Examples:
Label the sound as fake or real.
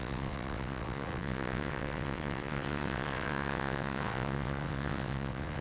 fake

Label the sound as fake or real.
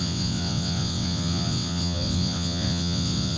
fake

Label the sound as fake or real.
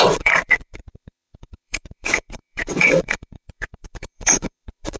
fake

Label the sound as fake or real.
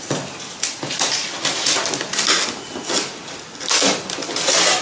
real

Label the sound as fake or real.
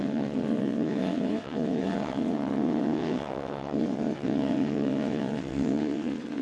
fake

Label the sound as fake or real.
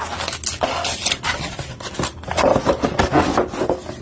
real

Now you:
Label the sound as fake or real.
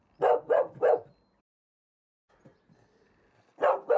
real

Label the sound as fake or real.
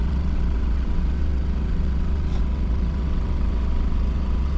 fake